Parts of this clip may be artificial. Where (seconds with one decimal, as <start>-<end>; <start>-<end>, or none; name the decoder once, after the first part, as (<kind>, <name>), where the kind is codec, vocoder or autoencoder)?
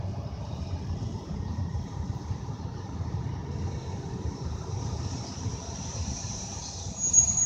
0.0-3.4 (vocoder, BigVGAN v2); 4.3-6.6; 7.1-7.5